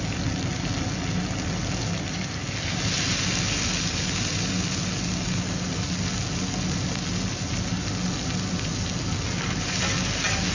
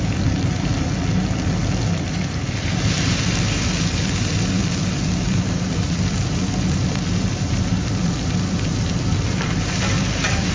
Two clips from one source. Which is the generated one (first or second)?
second